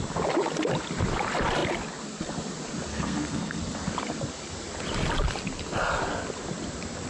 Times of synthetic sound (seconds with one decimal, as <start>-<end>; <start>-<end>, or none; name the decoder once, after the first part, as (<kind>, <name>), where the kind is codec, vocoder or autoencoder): 2.9-3.6 (codec, SNAC)